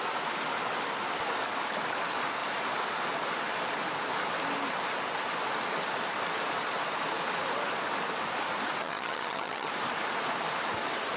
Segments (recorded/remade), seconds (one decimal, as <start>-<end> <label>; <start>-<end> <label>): 0.0-8.8 recorded; 8.8-9.7 remade; 9.7-11.2 recorded